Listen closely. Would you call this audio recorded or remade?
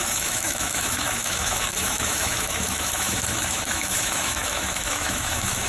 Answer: remade